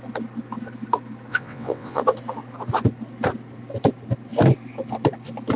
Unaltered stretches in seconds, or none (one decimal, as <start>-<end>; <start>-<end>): 0.0-1.3; 2.0-5.6